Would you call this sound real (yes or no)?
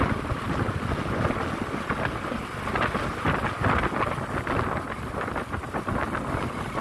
yes